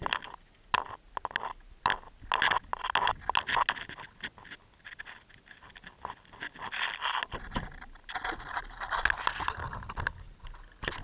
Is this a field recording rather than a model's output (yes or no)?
yes